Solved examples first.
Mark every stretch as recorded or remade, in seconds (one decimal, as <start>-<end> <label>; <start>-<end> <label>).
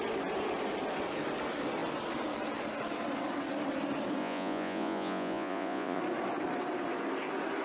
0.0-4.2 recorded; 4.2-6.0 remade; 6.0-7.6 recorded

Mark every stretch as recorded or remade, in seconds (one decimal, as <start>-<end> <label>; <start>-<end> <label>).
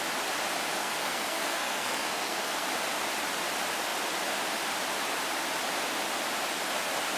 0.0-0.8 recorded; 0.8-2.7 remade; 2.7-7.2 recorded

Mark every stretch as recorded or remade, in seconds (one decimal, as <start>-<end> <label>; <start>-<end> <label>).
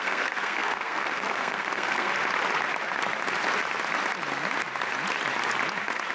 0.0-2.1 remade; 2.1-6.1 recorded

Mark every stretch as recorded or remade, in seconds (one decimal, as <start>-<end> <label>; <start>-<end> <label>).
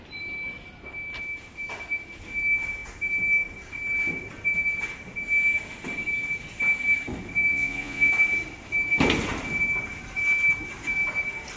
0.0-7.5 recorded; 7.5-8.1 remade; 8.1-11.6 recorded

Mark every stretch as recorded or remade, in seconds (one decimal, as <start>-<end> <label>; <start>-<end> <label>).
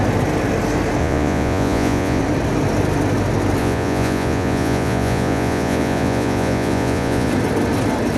0.0-1.0 recorded; 1.0-2.2 remade; 2.2-3.6 recorded; 3.6-7.3 remade; 7.3-8.2 recorded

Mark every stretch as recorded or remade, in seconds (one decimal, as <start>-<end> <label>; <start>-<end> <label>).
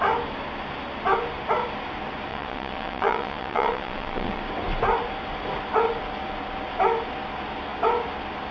0.0-2.3 recorded; 2.3-4.4 remade; 4.4-8.5 recorded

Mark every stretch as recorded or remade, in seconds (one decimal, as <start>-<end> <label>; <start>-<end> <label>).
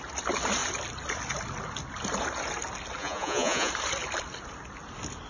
0.0-3.0 recorded; 3.0-3.7 remade; 3.7-5.3 recorded